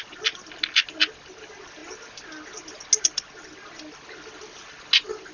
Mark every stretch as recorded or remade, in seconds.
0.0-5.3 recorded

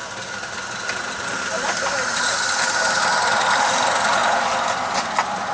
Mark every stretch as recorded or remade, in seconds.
0.0-5.5 recorded

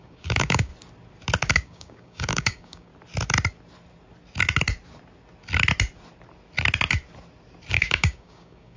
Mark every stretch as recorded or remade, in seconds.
0.0-0.7 remade; 0.7-1.5 recorded; 1.5-2.9 remade; 2.9-7.7 recorded; 7.7-8.8 remade

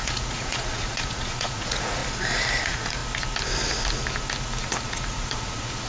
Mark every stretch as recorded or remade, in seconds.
0.0-2.0 remade; 2.0-2.6 recorded; 2.6-3.0 remade; 3.0-4.8 recorded; 4.8-5.9 remade